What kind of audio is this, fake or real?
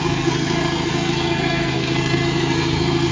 fake